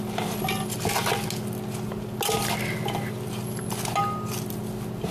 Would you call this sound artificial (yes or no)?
no